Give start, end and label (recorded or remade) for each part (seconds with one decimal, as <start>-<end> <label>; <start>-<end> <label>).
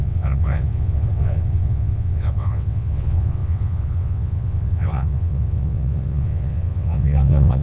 0.0-7.6 remade